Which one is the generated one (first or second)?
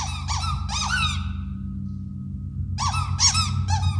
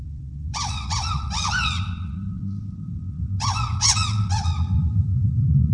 second